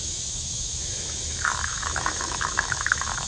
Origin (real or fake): fake